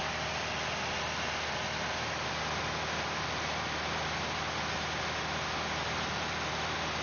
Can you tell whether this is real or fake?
real